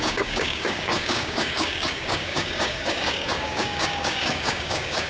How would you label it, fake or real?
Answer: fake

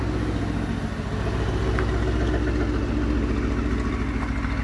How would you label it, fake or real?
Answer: real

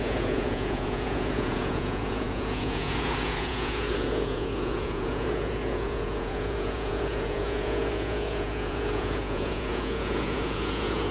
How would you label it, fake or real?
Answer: fake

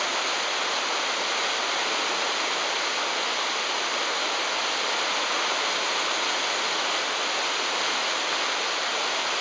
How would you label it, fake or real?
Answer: real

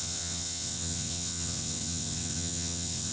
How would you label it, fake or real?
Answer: fake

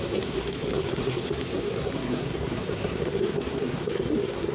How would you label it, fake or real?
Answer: fake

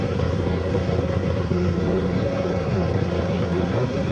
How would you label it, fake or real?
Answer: fake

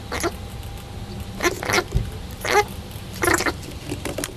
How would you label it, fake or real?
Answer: real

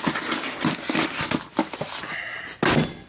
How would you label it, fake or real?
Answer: real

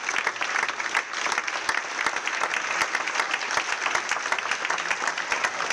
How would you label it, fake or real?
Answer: real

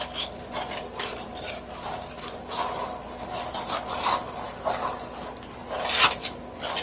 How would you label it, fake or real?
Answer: real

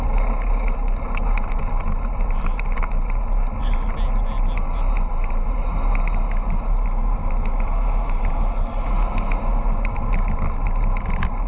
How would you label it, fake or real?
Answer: real